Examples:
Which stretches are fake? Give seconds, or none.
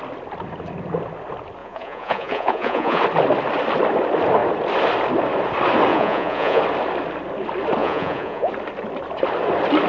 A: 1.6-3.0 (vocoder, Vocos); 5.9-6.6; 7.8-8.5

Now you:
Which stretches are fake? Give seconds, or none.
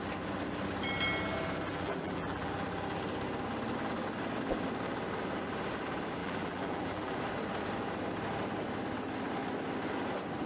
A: 1.7-2.5 (vocoder, BigVGAN v2); 6.2-7.2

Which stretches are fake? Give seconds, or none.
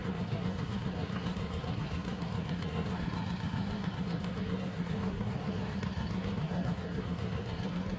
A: 0.0-8.0 (codec, SNAC)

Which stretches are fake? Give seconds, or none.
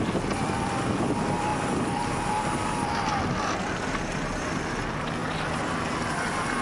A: none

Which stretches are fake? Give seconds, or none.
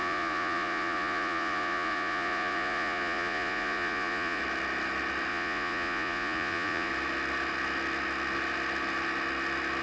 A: 0.0-4.4 (vocoder, Vocos); 5.3-6.9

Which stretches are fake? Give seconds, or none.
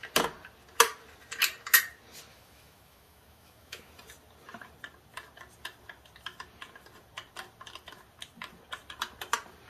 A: 2.3-3.9 (autoencoder, DAC-VAE)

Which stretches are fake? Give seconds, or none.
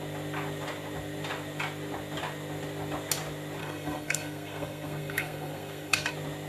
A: 3.6-6.1 (codec, SNAC)